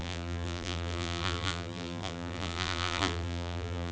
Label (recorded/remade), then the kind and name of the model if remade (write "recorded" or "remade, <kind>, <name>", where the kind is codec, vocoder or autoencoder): remade, vocoder, BigVGAN v2